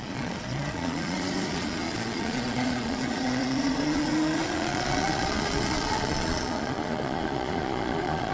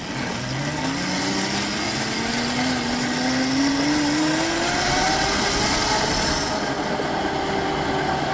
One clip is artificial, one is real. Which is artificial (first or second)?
first